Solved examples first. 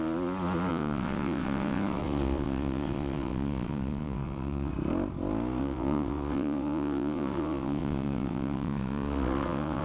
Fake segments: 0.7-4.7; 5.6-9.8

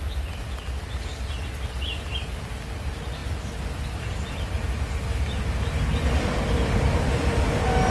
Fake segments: none

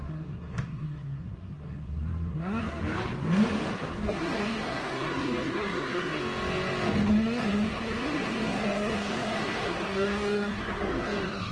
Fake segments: 0.0-2.8; 3.7-6.2; 7.1-11.5

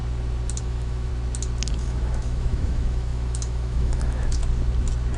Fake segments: 0.6-1.1; 1.7-4.4